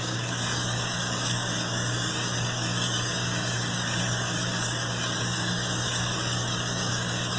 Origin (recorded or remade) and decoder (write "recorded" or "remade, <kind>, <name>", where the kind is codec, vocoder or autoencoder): remade, codec, DAC